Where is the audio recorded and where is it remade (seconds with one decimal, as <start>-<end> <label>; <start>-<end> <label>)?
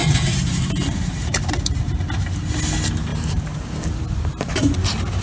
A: 0.0-1.9 remade; 1.9-3.1 recorded; 3.1-4.0 remade; 4.0-5.2 recorded